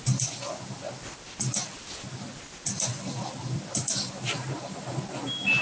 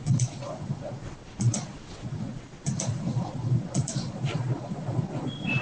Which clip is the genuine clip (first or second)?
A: first